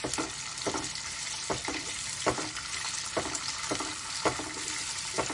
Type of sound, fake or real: real